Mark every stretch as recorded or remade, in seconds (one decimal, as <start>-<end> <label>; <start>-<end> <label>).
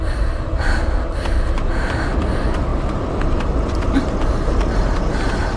0.0-5.6 recorded